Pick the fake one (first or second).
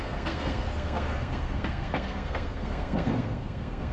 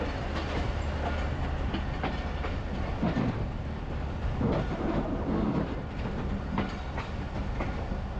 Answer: first